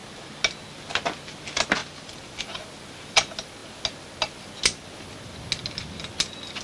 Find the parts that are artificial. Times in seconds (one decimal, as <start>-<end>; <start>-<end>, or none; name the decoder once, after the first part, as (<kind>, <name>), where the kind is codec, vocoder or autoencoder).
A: 1.8-2.4 (vocoder, BigVGAN v2)